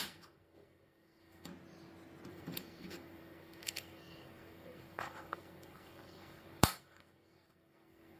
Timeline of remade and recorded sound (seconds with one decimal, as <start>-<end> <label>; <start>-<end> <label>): 0.0-1.5 remade; 1.5-2.3 recorded; 2.3-8.2 remade